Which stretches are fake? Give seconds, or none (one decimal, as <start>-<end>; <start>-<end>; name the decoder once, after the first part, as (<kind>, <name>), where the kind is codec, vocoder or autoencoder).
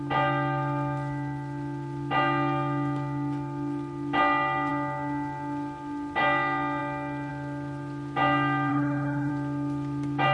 8.7-9.3 (codec, HILCodec)